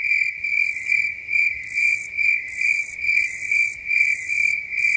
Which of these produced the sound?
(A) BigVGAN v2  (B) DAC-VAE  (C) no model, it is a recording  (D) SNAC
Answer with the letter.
C